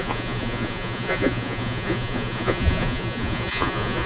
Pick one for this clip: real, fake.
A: fake